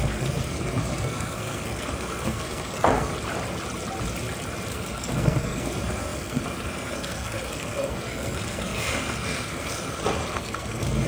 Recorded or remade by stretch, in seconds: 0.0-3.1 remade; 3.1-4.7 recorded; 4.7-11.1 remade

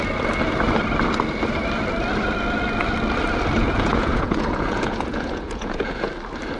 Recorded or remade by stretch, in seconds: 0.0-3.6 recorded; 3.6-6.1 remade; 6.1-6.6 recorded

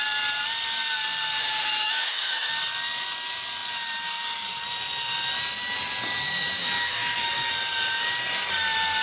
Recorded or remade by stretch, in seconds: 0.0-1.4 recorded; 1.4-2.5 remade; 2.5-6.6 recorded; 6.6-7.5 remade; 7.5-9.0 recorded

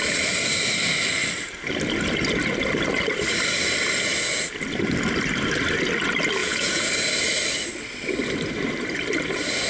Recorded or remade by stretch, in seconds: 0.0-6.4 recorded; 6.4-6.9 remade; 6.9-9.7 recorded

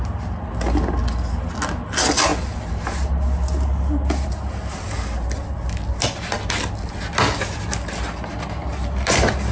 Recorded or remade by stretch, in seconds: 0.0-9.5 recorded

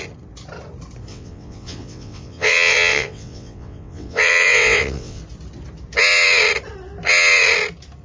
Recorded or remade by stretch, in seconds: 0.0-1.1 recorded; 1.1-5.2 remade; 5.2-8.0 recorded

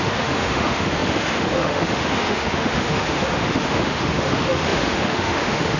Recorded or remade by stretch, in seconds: 0.0-5.8 remade

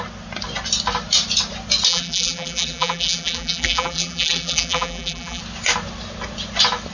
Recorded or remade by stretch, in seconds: 0.0-1.9 recorded; 1.9-5.4 remade; 5.4-6.9 recorded